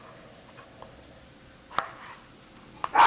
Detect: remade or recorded recorded